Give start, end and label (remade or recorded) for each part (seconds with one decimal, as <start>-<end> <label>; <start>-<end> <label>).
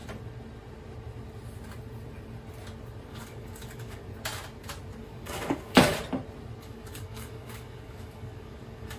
0.0-3.1 recorded; 3.1-4.0 remade; 4.0-5.0 recorded; 5.0-5.9 remade; 5.9-6.6 recorded; 6.6-9.0 remade